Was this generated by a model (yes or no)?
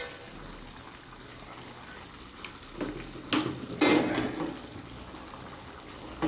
no